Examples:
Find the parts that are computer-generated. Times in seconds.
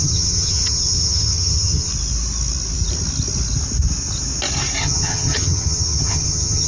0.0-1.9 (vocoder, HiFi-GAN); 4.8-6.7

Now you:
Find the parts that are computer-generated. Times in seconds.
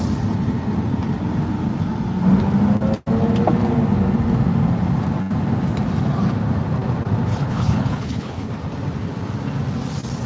7.3-8.5 (codec, HILCodec)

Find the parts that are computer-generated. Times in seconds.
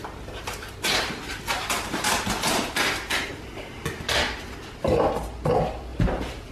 0.0-3.3 (vocoder, BigVGAN v2); 5.9-6.5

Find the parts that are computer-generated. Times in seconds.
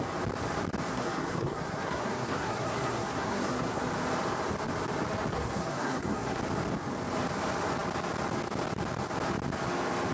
0.9-3.8 (codec, SNAC); 5.3-6.4